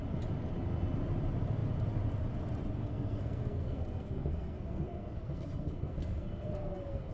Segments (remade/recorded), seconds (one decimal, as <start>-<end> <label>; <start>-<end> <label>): 0.0-2.8 recorded; 2.8-7.1 remade